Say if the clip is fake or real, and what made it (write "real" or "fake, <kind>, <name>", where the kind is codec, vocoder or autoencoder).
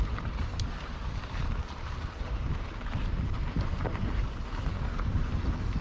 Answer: fake, vocoder, BigVGAN v2